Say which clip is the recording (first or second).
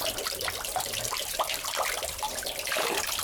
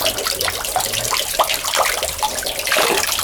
second